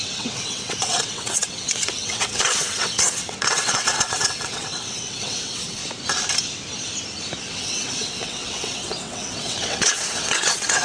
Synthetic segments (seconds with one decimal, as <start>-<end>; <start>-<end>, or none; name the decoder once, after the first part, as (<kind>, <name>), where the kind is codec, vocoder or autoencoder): 0.0-5.8 (vocoder, WaveNeXt); 7.4-10.8